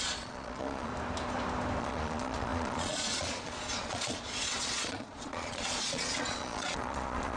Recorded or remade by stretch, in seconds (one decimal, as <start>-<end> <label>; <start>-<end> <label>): 0.0-0.9 remade; 0.9-1.8 recorded; 1.8-7.4 remade